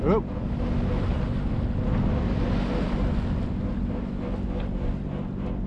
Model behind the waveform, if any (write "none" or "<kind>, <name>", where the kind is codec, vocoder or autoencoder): none